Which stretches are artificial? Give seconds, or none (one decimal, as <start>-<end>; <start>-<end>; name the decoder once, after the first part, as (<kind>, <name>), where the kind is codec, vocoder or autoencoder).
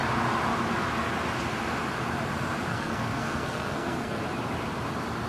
2.7-4.2 (codec, SNAC)